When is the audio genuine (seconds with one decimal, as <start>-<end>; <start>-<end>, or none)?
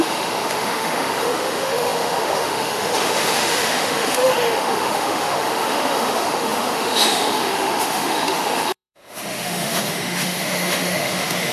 none